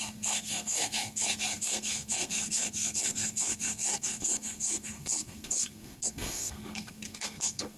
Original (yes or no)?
no